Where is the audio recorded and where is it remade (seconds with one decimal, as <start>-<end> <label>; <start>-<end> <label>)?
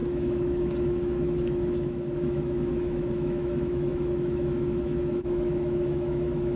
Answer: 0.0-6.5 remade